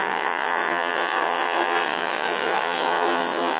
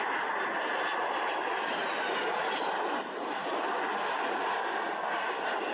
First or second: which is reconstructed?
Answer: first